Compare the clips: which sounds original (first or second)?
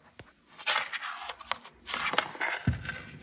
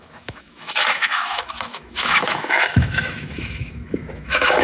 first